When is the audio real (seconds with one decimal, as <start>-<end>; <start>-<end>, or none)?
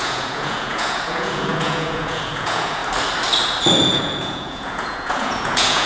2.8-3.9